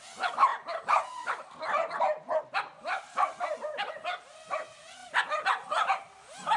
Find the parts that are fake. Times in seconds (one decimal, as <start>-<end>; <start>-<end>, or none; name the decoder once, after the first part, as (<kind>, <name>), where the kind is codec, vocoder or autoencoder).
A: 0.5-2.4 (vocoder, BigVGAN v2)